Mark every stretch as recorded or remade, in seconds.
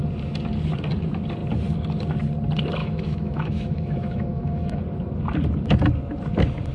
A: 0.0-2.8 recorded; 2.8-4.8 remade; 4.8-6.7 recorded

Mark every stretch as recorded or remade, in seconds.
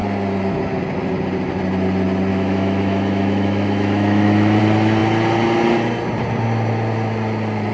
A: 0.0-2.3 recorded; 2.3-4.6 remade; 4.6-7.7 recorded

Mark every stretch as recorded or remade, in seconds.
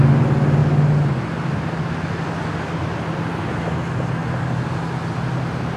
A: 0.0-5.8 recorded